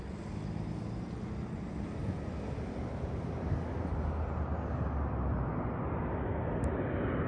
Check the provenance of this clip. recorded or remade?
recorded